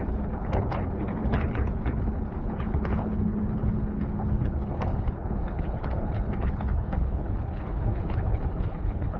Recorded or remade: remade